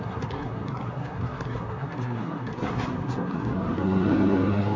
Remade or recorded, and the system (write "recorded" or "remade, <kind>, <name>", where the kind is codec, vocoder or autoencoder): remade, codec, SNAC